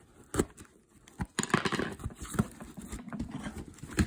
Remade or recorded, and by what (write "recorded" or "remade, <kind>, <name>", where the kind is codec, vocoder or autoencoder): recorded